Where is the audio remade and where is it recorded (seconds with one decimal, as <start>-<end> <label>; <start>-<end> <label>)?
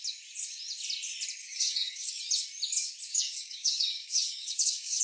0.0-1.4 recorded; 1.4-2.2 remade; 2.2-3.1 recorded; 3.1-5.0 remade